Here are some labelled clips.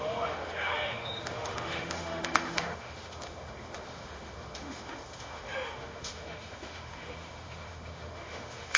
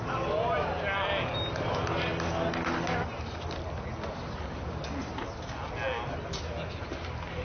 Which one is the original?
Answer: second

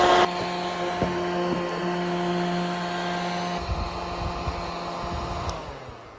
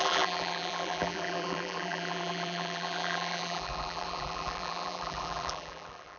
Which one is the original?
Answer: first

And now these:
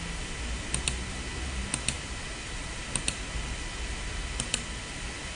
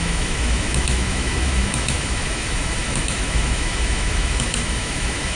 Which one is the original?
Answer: first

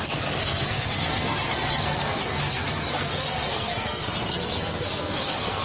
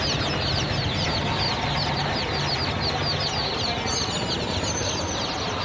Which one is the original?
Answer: second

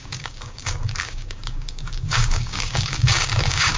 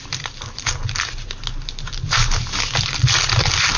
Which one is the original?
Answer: second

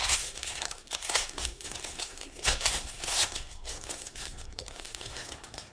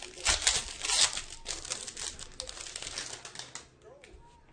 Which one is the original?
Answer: second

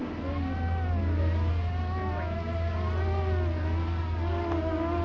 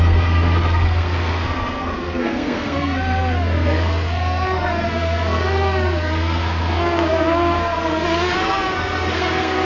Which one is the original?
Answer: first